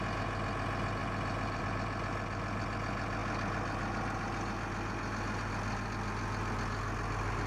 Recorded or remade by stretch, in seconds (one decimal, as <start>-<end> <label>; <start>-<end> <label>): 0.0-7.5 recorded